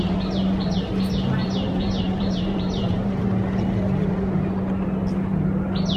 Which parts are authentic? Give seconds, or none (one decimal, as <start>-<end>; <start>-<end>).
0.0-1.4; 3.2-6.0

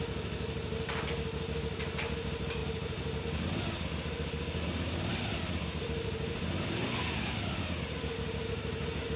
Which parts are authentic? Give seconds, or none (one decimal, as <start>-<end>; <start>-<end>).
0.0-2.6; 3.2-5.1; 6.8-9.2

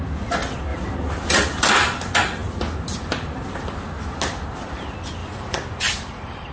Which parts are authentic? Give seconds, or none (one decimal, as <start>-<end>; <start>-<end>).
0.0-0.7; 1.7-5.2

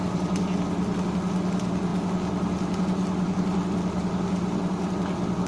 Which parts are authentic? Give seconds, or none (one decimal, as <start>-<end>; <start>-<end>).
0.0-5.5

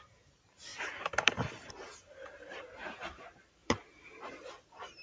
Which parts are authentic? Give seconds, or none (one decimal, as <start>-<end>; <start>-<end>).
none